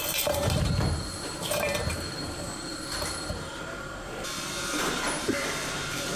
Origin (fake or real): fake